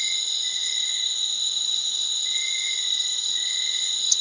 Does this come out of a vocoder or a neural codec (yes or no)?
no